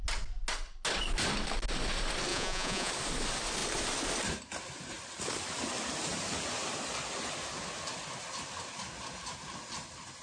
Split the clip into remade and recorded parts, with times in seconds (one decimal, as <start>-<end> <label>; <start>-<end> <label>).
0.0-2.3 recorded; 2.3-2.9 remade; 2.9-10.2 recorded